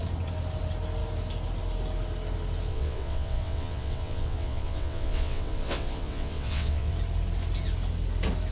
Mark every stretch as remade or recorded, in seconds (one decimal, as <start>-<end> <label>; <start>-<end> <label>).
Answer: 0.0-2.7 recorded; 2.7-6.9 remade; 6.9-8.5 recorded